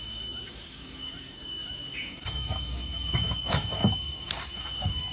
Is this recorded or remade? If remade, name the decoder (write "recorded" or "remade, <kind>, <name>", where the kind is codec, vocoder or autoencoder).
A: remade, codec, DAC